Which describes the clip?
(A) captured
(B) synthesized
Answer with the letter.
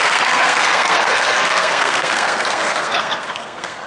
B